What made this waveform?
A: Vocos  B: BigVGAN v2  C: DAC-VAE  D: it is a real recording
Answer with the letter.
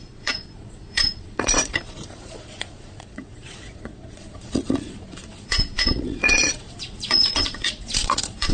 A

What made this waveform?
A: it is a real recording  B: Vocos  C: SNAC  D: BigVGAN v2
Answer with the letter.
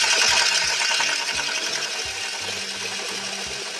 A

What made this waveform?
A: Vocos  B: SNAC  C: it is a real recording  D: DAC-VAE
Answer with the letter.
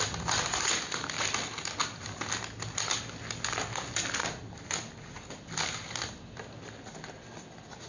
C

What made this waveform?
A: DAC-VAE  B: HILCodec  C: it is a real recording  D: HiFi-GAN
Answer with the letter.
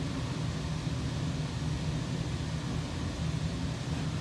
C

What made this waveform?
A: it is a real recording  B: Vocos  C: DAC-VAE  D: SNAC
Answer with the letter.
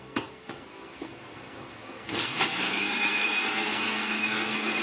D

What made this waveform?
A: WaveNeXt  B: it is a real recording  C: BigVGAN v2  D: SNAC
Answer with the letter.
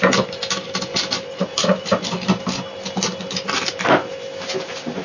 B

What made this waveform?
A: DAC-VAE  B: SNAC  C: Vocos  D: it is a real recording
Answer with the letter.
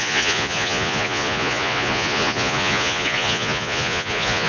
C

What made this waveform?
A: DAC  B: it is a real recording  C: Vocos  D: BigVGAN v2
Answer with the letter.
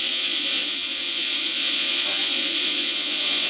C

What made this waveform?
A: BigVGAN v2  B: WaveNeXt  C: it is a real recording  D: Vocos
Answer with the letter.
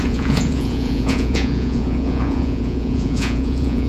D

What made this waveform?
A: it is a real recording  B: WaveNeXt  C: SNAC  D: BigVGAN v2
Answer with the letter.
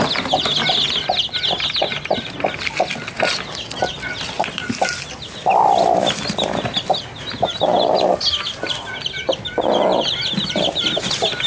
A